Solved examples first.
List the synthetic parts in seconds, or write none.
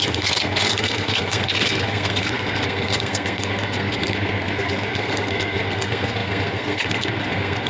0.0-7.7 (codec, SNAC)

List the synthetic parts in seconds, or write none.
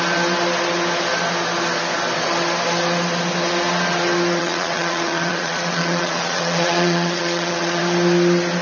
4.4-7.8 (vocoder, Vocos)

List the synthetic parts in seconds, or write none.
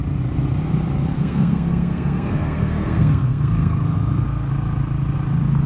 1.1-4.5 (codec, SNAC)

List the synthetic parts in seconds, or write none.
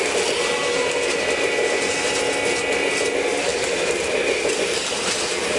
none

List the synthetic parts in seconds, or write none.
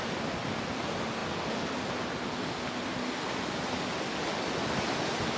none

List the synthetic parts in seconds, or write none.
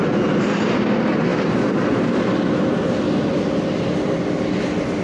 none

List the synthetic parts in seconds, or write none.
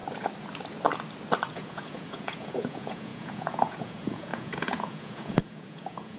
1.5-6.2 (vocoder, Vocos)